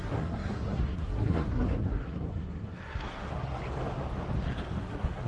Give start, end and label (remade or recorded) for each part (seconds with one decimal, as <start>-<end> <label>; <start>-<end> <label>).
0.0-3.6 remade; 3.6-4.8 recorded; 4.8-5.3 remade